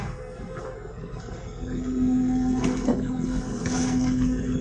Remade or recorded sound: remade